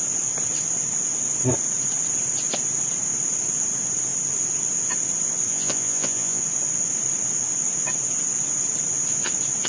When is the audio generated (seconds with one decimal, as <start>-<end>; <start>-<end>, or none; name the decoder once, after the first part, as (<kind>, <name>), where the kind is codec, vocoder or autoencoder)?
5.5-6.4 (vocoder, Vocos)